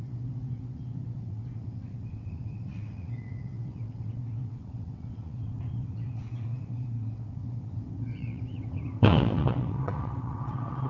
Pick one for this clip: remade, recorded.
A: remade